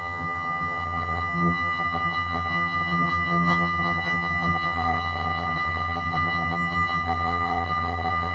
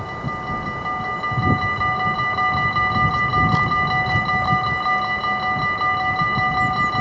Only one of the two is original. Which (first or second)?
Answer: second